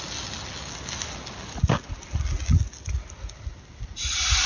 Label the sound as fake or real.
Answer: real